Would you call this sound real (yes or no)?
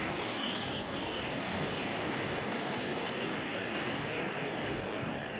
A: no